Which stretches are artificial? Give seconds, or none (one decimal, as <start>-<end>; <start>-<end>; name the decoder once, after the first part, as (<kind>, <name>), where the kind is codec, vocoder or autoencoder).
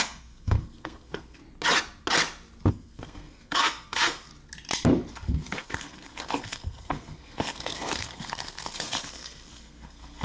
0.0-1.4 (codec, SNAC); 2.7-4.3; 5.1-10.2